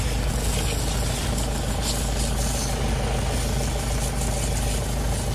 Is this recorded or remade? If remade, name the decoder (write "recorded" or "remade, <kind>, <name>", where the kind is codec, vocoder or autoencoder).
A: recorded